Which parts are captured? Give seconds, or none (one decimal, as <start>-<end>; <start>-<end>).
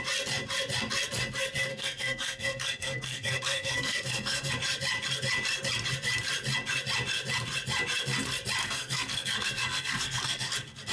0.0-1.7; 4.5-8.6; 10.5-10.9